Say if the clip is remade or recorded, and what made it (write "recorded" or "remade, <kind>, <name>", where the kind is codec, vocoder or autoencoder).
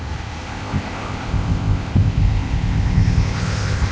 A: remade, codec, ZipCodec